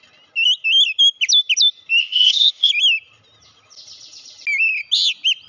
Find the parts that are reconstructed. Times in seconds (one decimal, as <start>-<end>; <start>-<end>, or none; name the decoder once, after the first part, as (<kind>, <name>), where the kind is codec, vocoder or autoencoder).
2.0-2.7 (codec, ZipCodec)